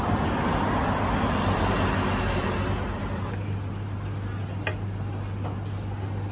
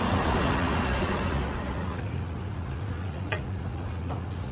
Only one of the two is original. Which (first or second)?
first